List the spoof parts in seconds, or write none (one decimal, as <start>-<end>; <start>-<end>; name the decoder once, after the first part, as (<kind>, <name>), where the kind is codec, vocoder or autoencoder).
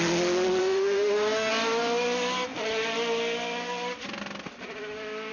0.6-1.5 (autoencoder, DAC-VAE)